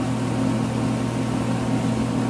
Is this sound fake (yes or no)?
no